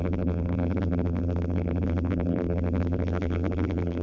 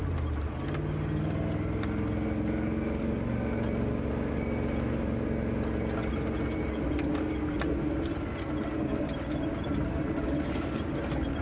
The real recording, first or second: second